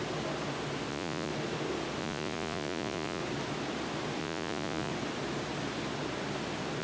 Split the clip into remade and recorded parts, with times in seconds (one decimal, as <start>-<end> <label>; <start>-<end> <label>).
0.0-0.9 recorded; 0.9-1.3 remade; 1.3-2.0 recorded; 2.0-3.2 remade; 3.2-4.2 recorded; 4.2-4.9 remade; 4.9-6.8 recorded